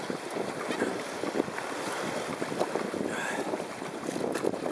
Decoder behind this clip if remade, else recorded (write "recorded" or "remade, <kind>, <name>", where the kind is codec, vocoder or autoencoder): recorded